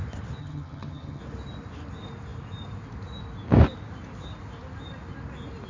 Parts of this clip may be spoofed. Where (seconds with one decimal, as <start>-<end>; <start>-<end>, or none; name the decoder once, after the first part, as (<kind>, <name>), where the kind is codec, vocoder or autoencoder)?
0.4-1.2 (vocoder, HiFi-GAN)